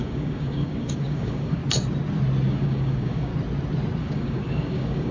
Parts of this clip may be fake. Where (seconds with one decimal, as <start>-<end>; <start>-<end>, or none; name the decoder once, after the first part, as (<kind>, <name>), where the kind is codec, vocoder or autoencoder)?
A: 0.0-1.6 (codec, DAC); 2.5-3.3; 4.0-5.1